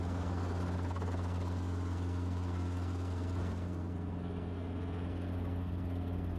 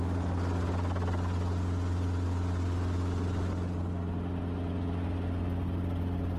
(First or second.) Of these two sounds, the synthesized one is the first